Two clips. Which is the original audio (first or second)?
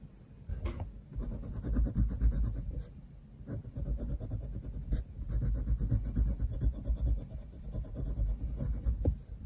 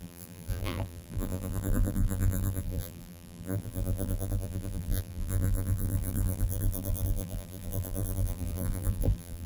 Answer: first